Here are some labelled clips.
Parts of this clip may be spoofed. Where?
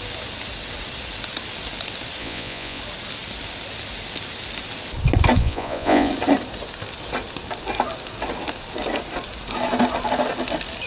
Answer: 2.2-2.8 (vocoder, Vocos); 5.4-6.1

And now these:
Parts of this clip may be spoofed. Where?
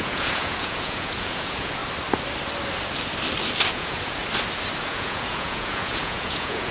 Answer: 0.0-1.8 (vocoder, Vocos); 3.7-4.2; 4.8-6.7